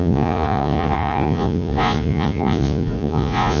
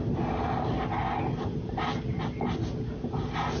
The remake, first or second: first